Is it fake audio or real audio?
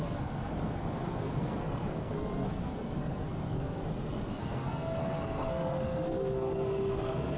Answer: fake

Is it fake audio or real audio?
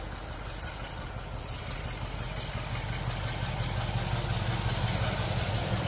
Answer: real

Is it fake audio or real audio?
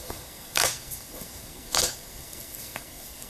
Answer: fake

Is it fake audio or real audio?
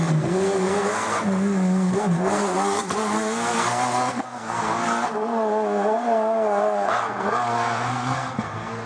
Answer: fake